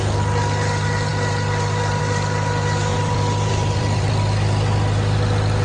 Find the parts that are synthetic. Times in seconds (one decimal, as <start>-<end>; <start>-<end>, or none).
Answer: 2.9-4.1